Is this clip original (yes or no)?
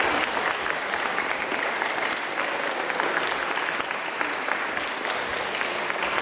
yes